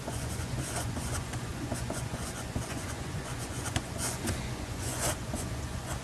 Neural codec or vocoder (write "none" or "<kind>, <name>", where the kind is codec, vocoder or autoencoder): vocoder, Vocos